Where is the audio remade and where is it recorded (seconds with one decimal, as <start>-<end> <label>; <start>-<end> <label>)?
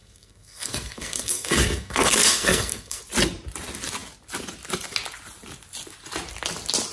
0.0-3.0 remade; 3.0-6.9 recorded